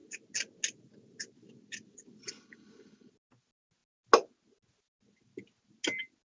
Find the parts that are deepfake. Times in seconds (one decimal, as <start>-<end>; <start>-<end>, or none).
2.2-3.1

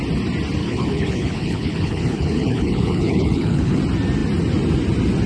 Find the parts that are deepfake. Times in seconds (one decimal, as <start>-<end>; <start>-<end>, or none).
0.6-3.8

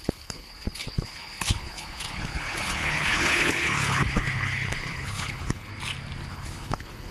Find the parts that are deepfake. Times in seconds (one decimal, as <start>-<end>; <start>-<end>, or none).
0.0-5.7; 6.3-7.1

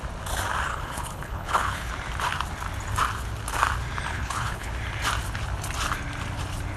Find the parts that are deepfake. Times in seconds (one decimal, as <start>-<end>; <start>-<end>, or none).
0.7-1.9; 4.1-4.7

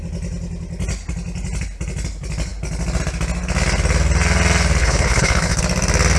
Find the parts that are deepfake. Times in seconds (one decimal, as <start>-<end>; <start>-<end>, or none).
4.8-5.6